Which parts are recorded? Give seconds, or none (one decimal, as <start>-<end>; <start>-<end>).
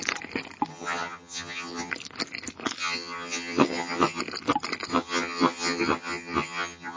0.0-0.7; 1.9-2.8; 4.2-4.9